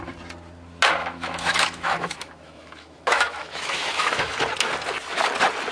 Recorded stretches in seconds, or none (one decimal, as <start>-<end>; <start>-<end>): 0.0-1.0; 4.4-5.7